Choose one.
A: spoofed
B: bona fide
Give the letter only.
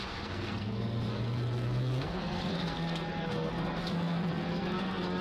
A